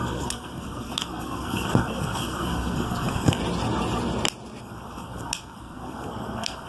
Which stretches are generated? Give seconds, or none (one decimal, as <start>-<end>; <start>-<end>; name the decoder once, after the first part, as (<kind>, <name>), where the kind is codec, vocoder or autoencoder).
0.0-3.4 (codec, SNAC); 4.6-6.7